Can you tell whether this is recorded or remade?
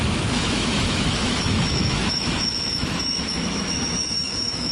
remade